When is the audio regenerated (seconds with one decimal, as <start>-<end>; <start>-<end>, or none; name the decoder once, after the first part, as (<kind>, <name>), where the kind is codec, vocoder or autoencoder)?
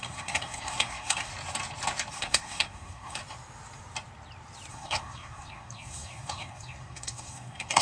0.0-1.3 (codec, SNAC); 2.1-3.2; 4.7-7.8